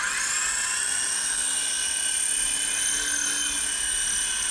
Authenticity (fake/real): real